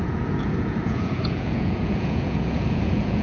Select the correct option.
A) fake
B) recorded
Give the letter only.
A